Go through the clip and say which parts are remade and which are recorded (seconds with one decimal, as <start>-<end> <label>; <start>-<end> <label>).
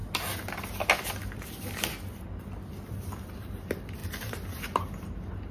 0.0-3.3 recorded; 3.3-5.5 remade